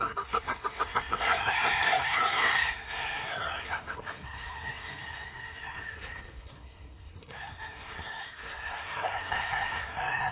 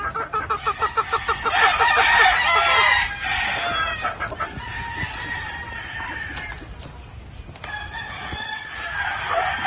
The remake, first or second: first